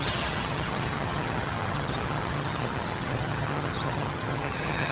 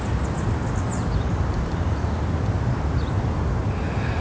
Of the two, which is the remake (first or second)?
first